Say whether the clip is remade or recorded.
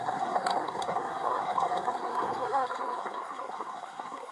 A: remade